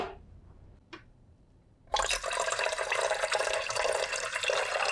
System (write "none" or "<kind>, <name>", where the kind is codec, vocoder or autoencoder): vocoder, BigVGAN v2